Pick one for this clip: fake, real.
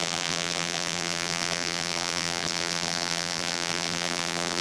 fake